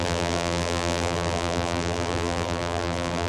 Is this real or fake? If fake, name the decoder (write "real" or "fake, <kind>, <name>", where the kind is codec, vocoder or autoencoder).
fake, vocoder, BigVGAN v2